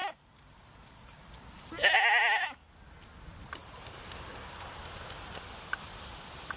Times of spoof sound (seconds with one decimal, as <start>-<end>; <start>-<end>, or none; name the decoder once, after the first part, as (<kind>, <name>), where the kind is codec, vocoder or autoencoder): 0.0-1.3 (vocoder, BigVGAN v2); 3.6-4.3